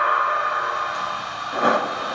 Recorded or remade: recorded